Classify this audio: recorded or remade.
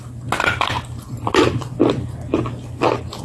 recorded